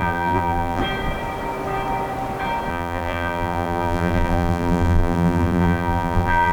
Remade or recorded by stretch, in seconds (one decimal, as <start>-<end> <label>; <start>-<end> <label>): 0.0-0.8 remade; 0.8-2.7 recorded; 2.7-6.5 remade

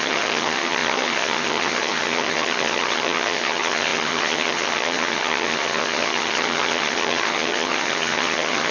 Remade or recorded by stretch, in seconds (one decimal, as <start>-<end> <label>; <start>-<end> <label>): 0.0-8.7 remade